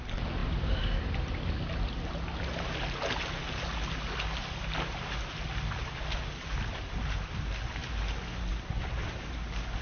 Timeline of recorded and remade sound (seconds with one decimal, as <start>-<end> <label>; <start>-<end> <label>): 0.0-9.8 recorded